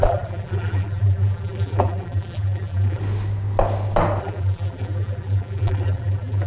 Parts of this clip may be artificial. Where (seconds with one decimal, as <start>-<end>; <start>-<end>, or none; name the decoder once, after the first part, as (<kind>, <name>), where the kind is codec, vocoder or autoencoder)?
0.0-3.0 (vocoder, BigVGAN v2); 4.2-6.5